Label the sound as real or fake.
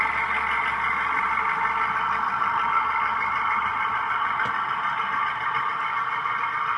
real